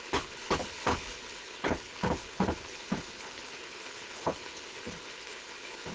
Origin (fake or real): fake